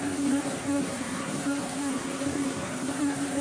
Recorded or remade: remade